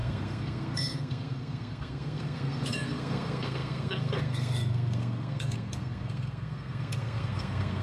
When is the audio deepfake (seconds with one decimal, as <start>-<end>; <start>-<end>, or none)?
0.0-7.8